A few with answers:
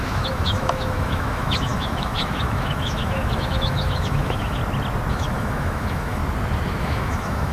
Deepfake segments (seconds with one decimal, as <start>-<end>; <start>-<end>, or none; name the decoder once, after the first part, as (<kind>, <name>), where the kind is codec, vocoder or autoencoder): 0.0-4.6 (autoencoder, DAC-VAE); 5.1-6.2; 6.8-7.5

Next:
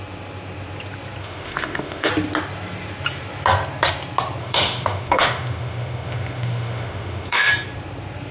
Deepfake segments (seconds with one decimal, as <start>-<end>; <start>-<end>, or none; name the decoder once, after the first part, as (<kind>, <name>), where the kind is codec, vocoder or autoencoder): 1.2-2.1 (autoencoder, DAC-VAE); 4.4-7.5

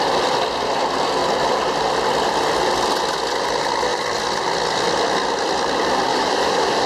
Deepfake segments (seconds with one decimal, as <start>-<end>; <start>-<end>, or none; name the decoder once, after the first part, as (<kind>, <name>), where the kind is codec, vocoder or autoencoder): 6.1-6.9 (autoencoder, DAC-VAE)

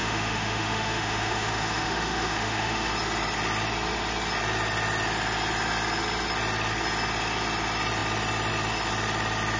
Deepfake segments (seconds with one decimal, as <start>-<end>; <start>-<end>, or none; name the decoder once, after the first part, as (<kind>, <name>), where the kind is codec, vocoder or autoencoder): 0.0-2.9 (autoencoder, DAC-VAE)

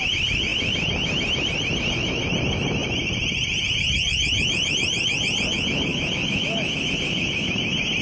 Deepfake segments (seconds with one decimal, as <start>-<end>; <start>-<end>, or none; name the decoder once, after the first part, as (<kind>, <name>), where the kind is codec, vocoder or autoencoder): none

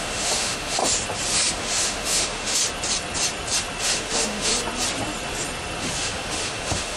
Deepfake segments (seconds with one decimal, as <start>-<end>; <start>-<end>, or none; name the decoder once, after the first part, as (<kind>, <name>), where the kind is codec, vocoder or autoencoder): 0.0-0.8 (autoencoder, DAC-VAE); 1.5-2.6; 3.8-4.5; 5.8-7.0

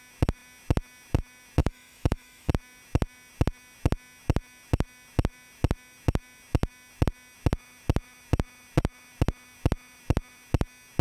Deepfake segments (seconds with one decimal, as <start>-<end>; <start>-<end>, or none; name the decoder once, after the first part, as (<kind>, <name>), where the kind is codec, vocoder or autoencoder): 1.6-2.5 (autoencoder, DAC-VAE)